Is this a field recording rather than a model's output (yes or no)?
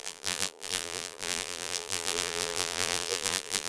no